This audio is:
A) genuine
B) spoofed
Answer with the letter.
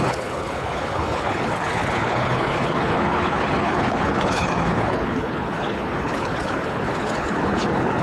B